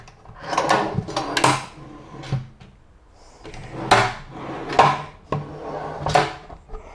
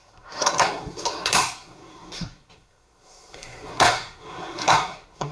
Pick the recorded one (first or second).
first